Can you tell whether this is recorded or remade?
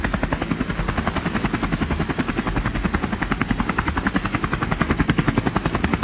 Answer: recorded